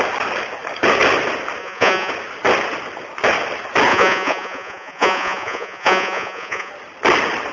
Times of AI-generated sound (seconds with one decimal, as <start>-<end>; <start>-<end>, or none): 1.6-2.1; 3.9-6.7